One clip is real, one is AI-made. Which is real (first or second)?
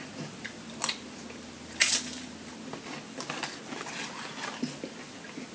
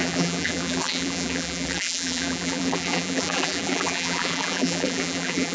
first